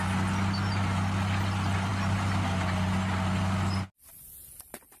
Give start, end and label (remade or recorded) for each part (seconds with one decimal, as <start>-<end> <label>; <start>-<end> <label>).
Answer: 0.0-5.0 recorded